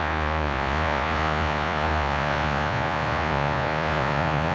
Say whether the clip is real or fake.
fake